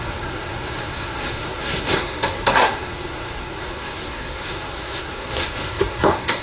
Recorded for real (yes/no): no